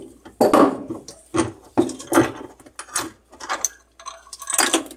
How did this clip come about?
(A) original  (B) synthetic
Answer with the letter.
A